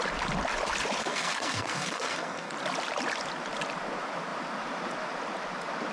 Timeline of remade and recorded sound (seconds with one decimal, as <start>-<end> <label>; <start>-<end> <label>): 0.0-1.0 recorded; 1.0-2.5 remade; 2.5-5.9 recorded